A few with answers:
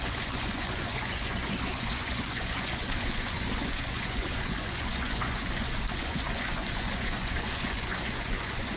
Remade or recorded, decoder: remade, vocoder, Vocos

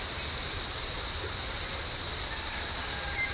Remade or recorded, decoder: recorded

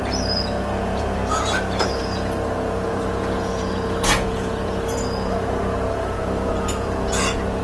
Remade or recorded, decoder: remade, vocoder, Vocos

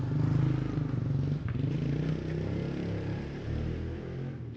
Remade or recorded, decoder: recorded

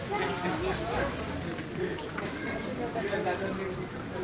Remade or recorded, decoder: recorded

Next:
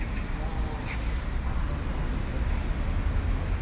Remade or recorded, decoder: recorded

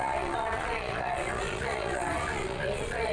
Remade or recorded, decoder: remade, vocoder, Vocos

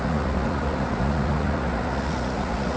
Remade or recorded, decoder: remade, vocoder, Vocos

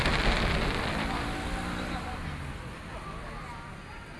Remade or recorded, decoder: recorded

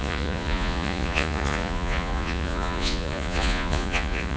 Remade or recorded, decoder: remade, vocoder, Vocos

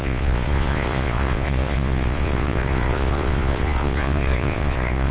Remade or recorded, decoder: remade, vocoder, Vocos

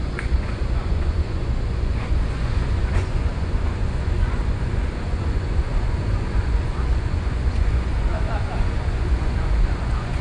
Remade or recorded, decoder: remade, vocoder, Vocos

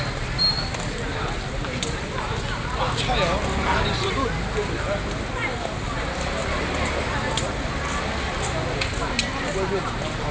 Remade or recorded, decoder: recorded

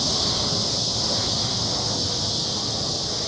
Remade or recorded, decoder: recorded